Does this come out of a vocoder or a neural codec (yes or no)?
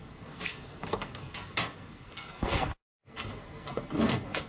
yes